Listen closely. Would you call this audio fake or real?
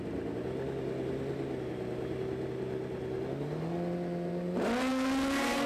real